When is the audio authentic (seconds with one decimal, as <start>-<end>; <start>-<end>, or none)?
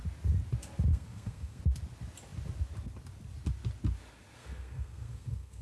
0.0-0.9; 1.6-4.4